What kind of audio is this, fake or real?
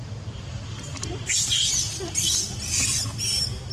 real